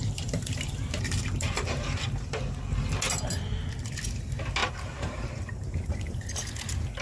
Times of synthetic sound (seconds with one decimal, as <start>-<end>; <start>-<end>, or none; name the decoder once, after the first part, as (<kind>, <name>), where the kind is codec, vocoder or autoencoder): 0.0-2.4 (vocoder, BigVGAN v2); 4.6-6.3